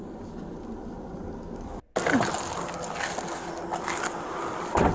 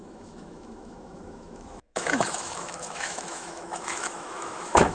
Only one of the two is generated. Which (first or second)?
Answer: second